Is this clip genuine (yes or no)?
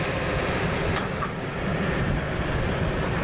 no